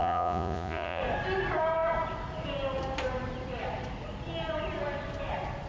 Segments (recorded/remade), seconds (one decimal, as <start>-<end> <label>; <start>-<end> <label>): 0.0-1.0 remade; 1.0-5.7 recorded